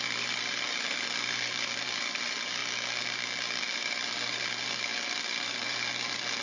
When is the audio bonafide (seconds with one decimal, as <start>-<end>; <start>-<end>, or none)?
2.6-3.6